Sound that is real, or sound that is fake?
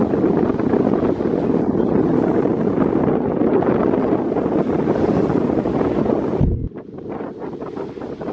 real